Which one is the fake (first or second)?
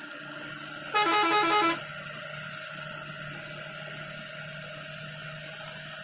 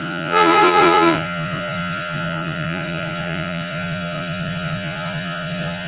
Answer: second